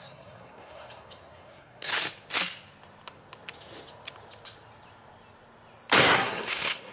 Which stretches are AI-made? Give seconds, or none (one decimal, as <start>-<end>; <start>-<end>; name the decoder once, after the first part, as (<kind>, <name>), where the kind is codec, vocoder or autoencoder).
0.0-1.9 (codec, SNAC); 6.0-6.9